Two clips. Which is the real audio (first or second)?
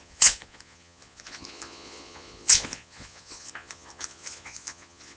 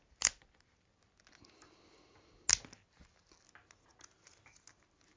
second